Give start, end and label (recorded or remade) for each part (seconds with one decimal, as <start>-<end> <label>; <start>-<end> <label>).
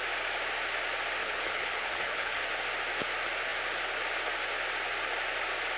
0.0-1.2 recorded; 1.2-2.4 remade; 2.4-5.8 recorded